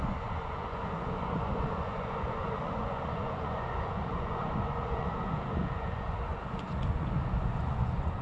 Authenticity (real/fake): fake